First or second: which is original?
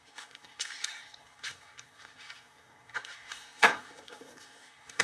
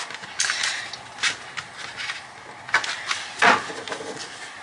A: second